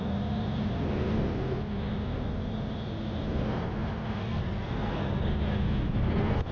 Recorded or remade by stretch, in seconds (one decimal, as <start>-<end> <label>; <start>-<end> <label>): 0.0-4.2 recorded; 4.2-5.2 remade; 5.2-6.5 recorded